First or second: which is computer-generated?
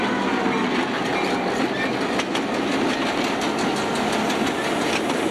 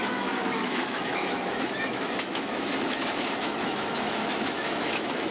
second